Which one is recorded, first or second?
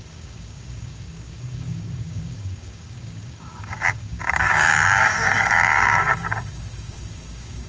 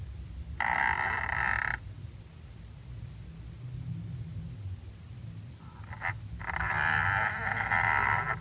second